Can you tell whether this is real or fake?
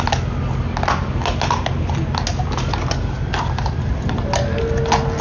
real